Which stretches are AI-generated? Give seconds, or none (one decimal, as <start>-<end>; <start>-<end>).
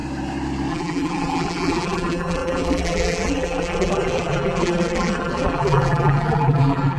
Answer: 0.7-7.0